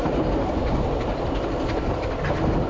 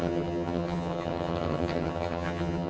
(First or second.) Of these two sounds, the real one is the first